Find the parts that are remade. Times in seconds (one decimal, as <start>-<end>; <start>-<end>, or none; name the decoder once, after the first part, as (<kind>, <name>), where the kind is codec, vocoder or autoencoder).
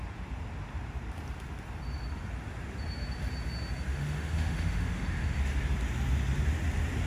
3.9-5.4 (autoencoder, DAC-VAE)